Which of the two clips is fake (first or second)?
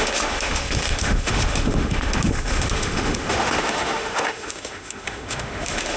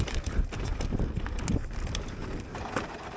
first